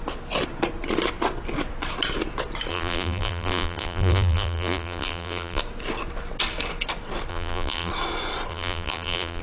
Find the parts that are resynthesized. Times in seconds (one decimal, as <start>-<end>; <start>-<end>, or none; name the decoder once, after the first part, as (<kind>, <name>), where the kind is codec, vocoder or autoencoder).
2.7-5.6 (vocoder, BigVGAN v2); 7.3-7.9; 8.5-9.4